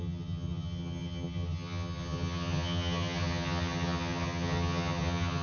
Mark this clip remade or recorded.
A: remade